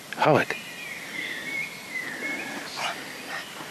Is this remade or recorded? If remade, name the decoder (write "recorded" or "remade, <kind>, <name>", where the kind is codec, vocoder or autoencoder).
recorded